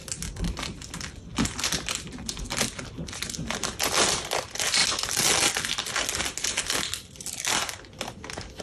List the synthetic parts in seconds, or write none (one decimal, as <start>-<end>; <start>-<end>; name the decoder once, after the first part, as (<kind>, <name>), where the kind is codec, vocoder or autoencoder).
none